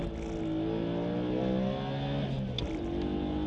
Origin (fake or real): real